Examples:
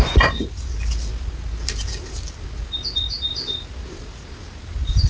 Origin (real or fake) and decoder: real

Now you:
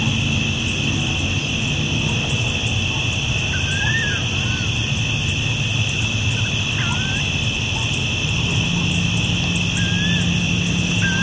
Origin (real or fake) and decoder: real